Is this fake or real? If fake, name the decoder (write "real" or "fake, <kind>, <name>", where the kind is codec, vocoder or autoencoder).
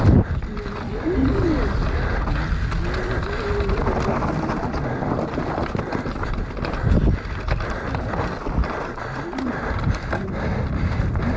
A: real